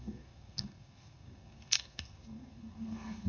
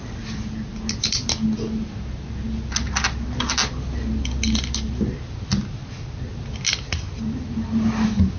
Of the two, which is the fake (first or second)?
first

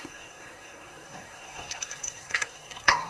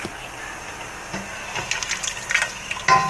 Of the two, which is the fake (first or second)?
first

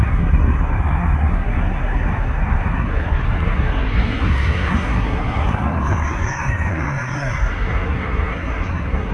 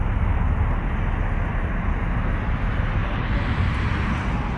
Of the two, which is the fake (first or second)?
first